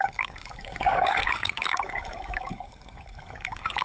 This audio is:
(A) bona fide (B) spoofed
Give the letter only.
B